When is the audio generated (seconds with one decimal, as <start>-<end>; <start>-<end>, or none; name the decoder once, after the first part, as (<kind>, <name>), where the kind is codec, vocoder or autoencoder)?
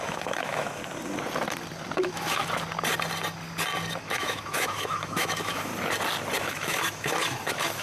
0.0-0.8 (autoencoder, DAC-VAE); 2.0-2.4; 4.0-5.7; 6.4-7.8